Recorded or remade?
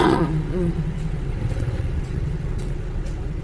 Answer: remade